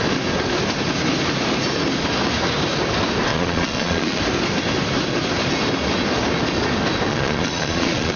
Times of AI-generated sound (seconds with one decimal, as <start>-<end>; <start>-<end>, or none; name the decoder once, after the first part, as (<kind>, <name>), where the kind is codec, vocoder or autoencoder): 3.3-4.2 (vocoder, Vocos); 7.1-8.2